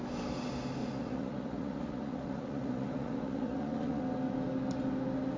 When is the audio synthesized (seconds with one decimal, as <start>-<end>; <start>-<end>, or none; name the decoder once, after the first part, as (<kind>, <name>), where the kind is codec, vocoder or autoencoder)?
0.8-4.0 (vocoder, Vocos)